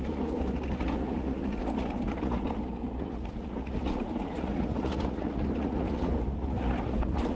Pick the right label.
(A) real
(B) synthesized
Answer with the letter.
B